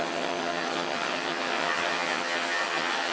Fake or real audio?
fake